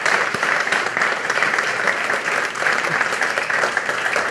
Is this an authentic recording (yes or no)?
no